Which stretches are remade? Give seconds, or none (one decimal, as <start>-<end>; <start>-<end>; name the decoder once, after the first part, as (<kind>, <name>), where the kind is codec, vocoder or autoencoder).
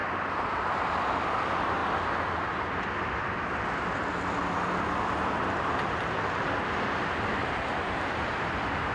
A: 0.0-1.1 (vocoder, BigVGAN v2); 7.4-8.4